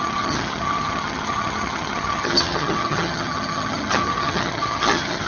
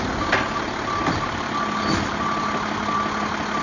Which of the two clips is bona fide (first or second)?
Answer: second